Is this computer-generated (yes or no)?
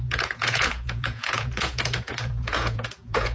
yes